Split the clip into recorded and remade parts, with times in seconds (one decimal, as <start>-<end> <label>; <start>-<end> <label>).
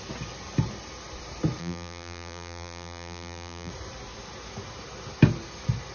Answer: 0.0-1.6 recorded; 1.6-3.7 remade; 3.7-5.9 recorded